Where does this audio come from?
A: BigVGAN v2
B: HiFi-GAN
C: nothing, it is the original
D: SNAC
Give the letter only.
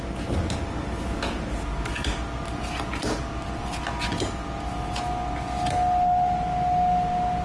C